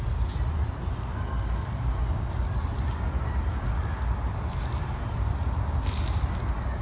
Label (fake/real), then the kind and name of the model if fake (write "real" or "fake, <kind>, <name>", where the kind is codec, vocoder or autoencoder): real